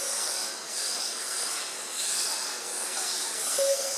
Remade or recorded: remade